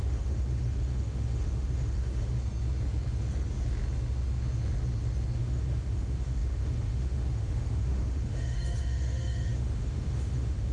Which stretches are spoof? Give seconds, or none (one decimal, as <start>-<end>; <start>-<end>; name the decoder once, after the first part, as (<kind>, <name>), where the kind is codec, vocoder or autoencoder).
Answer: 0.0-2.4 (autoencoder, DAC-VAE); 5.4-10.7